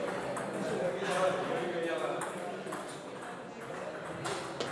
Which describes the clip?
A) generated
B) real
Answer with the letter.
B